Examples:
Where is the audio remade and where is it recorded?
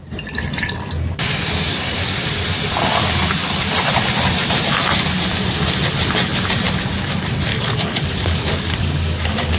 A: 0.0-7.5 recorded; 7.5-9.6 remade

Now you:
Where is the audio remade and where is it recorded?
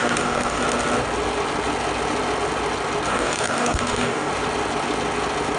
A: 0.0-0.6 remade; 0.6-3.1 recorded; 3.1-4.3 remade; 4.3-5.6 recorded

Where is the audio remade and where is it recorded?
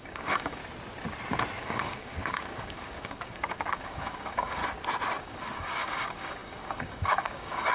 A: 0.0-0.6 remade; 0.6-1.6 recorded; 1.6-4.6 remade; 4.6-5.2 recorded; 5.2-7.7 remade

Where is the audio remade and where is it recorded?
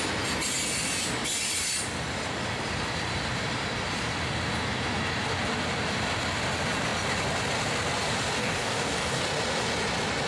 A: 0.0-8.4 recorded; 8.4-9.2 remade; 9.2-10.3 recorded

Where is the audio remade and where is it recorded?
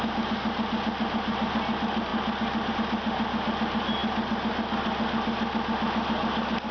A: 0.0-6.7 recorded